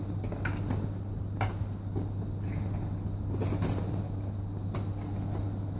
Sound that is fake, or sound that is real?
real